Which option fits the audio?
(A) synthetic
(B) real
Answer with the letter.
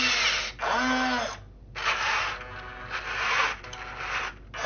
B